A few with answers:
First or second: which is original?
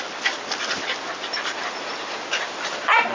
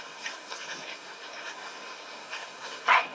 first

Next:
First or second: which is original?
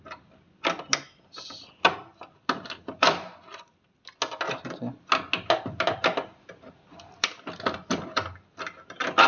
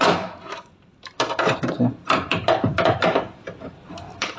first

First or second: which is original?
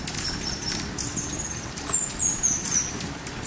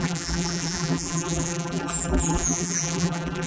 first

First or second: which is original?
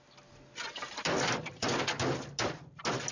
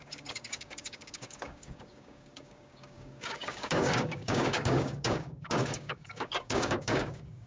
first